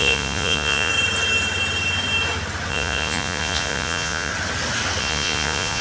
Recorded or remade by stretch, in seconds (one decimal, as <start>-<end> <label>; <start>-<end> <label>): 0.0-0.9 remade; 0.9-2.7 recorded; 2.7-4.3 remade; 4.3-5.0 recorded; 5.0-5.8 remade